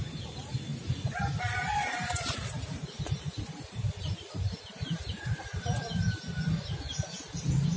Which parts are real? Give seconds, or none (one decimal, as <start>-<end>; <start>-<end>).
0.7-1.4